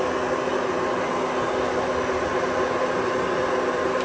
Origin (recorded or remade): recorded